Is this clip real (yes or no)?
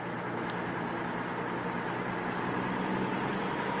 yes